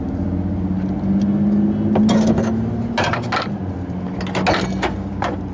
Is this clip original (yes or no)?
yes